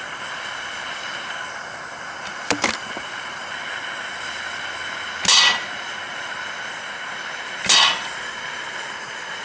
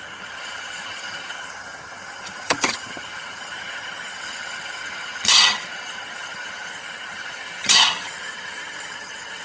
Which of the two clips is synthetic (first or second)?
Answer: second